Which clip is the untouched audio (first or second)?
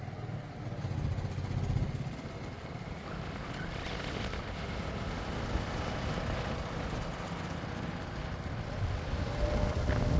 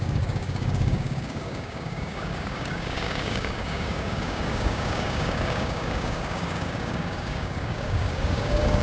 first